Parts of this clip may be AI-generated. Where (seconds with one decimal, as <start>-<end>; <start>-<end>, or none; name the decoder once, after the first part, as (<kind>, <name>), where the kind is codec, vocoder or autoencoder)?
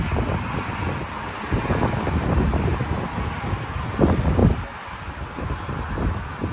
none